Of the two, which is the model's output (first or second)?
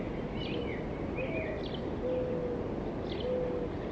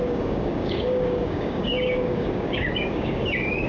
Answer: second